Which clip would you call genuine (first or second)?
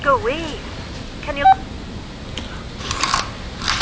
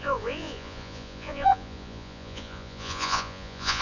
first